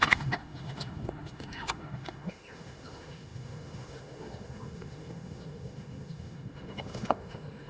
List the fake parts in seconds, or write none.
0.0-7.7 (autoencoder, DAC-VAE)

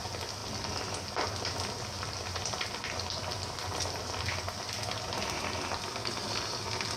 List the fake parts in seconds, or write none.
none

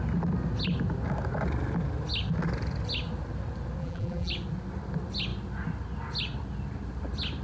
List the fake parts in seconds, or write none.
3.8-4.3 (vocoder, BigVGAN v2)

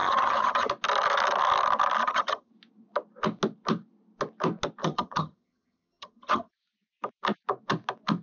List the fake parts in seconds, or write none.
0.0-0.7 (vocoder, HiFi-GAN); 2.0-2.5; 4.8-6.5

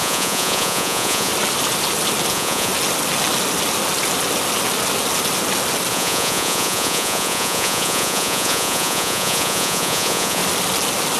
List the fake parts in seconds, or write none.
0.0-1.3 (vocoder, Vocos); 2.3-2.7; 5.9-10.4

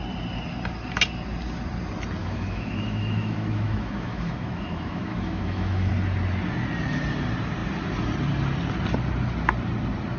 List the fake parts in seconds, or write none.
2.2-5.9 (autoencoder, DAC-VAE)

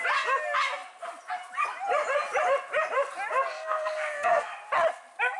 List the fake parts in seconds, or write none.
3.5-4.5 (codec, SNAC)